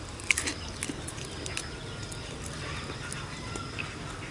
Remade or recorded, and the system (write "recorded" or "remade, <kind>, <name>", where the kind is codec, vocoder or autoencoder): recorded